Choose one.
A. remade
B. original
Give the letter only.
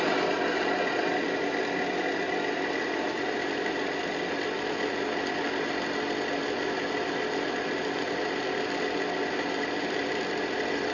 B